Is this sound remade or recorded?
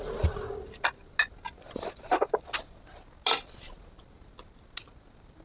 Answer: recorded